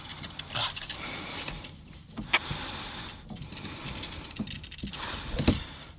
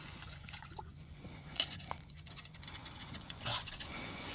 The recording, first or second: first